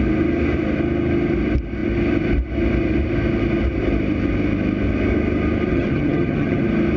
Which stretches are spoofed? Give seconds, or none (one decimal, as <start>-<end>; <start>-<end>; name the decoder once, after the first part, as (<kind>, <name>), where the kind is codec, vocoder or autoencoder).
5.7-6.6 (vocoder, HiFi-GAN)